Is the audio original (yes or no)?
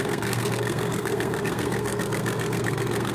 no